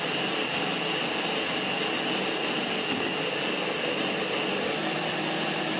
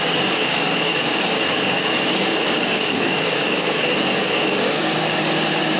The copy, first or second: second